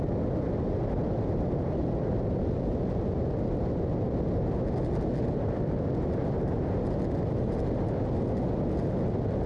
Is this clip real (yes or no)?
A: yes